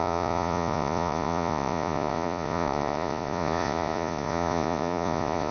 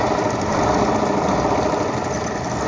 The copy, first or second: first